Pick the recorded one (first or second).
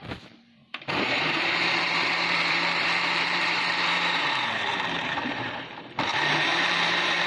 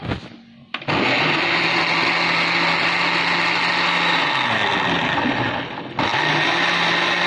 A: second